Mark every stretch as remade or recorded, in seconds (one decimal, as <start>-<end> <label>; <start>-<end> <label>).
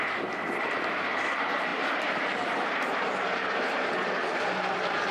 0.0-1.7 recorded; 1.7-5.1 remade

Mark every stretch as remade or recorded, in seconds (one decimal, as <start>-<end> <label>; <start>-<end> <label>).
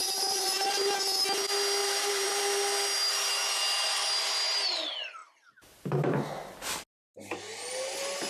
0.0-0.7 remade; 0.7-1.8 recorded; 1.8-2.4 remade; 2.4-8.3 recorded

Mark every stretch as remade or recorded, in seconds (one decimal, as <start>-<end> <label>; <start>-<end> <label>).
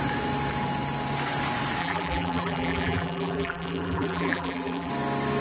0.0-1.8 recorded; 1.8-4.9 remade; 4.9-5.4 recorded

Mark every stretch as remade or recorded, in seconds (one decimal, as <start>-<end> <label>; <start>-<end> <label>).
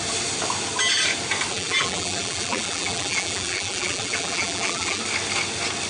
0.0-1.5 recorded; 1.5-5.0 remade; 5.0-5.9 recorded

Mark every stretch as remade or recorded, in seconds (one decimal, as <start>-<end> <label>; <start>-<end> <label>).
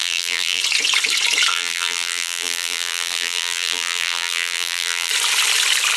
0.0-0.6 remade; 0.6-1.5 recorded; 1.5-5.1 remade; 5.1-6.0 recorded